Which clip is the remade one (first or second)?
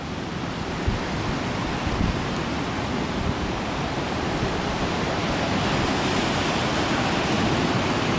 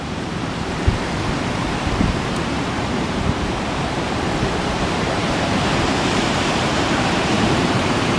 second